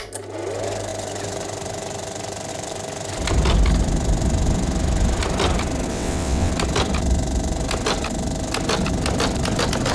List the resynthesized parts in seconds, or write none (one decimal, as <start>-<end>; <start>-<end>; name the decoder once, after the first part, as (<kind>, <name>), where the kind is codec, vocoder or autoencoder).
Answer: 5.9-6.5 (vocoder, WaveNeXt)